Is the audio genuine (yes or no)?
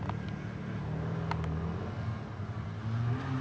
yes